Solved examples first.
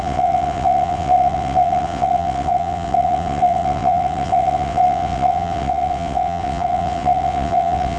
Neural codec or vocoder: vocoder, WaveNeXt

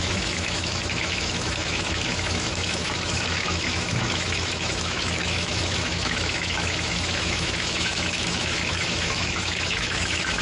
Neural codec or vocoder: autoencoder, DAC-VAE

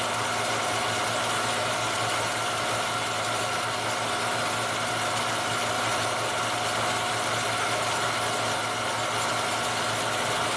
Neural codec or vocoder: none